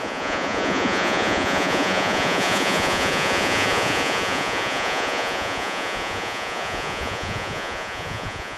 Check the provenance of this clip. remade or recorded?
remade